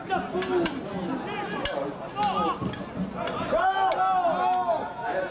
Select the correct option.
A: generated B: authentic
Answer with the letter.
B